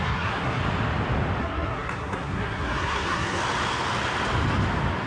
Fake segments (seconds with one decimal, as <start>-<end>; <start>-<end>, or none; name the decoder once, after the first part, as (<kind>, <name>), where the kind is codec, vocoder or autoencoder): 0.0-0.6 (codec, SNAC); 1.4-3.4